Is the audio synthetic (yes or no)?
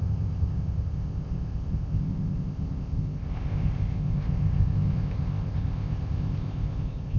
yes